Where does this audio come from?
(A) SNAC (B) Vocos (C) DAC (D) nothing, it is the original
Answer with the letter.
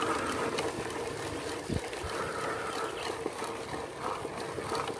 D